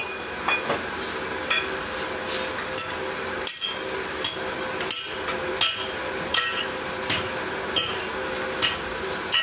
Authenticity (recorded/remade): recorded